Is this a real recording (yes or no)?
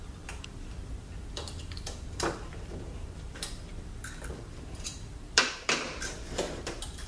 no